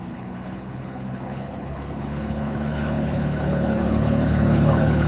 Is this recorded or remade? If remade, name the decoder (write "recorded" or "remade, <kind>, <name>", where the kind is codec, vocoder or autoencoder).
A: remade, codec, HILCodec